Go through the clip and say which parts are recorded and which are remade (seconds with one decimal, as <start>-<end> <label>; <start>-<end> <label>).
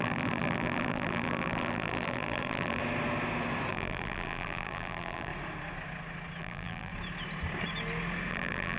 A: 0.0-2.8 remade; 2.8-3.7 recorded; 3.7-5.3 remade; 5.3-6.4 recorded; 6.4-6.9 remade; 6.9-8.3 recorded; 8.3-8.8 remade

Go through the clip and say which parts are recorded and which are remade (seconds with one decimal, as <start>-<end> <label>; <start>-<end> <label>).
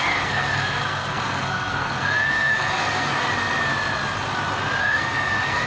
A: 0.0-3.2 remade; 3.2-4.8 recorded; 4.8-5.7 remade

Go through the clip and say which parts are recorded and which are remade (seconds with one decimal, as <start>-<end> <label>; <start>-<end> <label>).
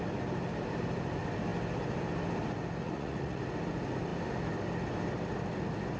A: 0.0-2.8 recorded; 2.8-3.4 remade; 3.4-6.0 recorded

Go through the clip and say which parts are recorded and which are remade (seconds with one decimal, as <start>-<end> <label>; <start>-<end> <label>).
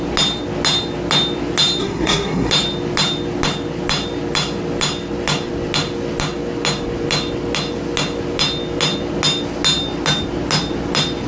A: 0.0-1.8 recorded; 1.8-2.5 remade; 2.5-11.3 recorded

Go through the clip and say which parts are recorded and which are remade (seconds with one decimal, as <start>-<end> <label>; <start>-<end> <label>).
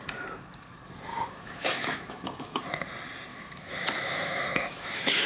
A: 0.0-1.1 recorded; 1.1-2.6 remade; 2.6-3.3 recorded; 3.3-5.3 remade